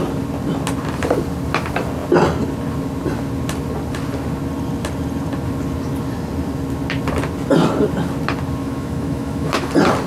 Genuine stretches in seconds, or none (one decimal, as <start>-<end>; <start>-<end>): 0.0-8.6; 9.7-10.1